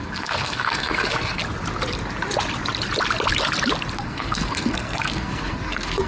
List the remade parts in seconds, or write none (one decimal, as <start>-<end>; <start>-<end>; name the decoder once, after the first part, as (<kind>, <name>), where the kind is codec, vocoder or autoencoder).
0.0-1.4 (codec, SNAC); 4.0-6.1